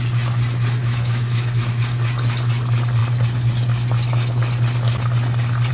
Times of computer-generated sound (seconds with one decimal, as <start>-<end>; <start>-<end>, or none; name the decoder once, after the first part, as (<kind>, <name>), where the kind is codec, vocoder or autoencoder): 0.8-1.7 (autoencoder, DAC-VAE)